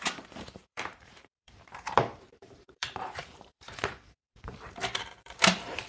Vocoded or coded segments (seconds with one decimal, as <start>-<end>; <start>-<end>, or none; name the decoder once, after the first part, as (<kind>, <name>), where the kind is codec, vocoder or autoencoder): 0.0-5.9 (vocoder, BigVGAN v2)